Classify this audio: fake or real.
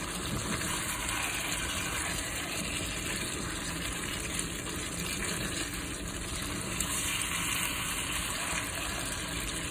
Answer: real